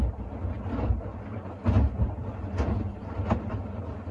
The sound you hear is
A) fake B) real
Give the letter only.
B